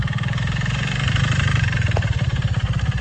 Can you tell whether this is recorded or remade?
remade